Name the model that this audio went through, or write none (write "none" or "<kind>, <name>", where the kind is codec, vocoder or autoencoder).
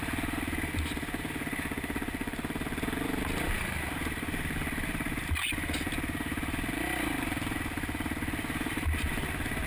none